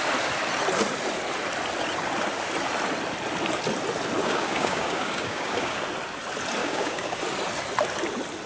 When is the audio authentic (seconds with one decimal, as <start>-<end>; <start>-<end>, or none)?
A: 0.0-4.2; 5.8-6.6; 7.2-8.5